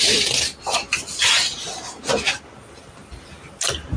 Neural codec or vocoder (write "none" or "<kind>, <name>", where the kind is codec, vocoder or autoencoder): none